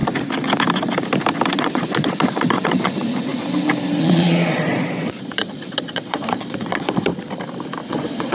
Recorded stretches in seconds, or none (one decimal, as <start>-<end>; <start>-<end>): 0.0-1.5; 3.3-4.0; 7.1-7.9